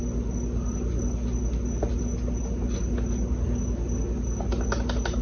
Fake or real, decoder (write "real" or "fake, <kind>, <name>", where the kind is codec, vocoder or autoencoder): real